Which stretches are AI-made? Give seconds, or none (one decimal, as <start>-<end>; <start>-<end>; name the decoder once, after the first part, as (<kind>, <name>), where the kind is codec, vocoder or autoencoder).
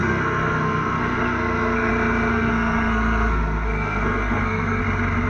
0.0-1.9 (codec, SNAC); 2.3-4.8